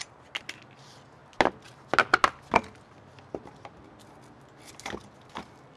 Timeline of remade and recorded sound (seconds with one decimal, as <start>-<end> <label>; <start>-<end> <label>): 0.0-5.8 recorded